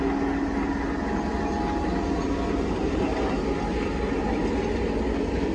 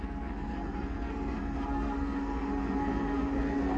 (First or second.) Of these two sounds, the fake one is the second